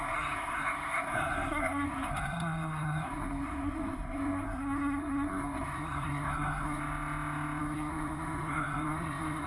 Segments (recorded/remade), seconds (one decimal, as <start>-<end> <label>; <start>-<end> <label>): 0.0-6.8 remade; 6.8-7.6 recorded; 7.6-9.5 remade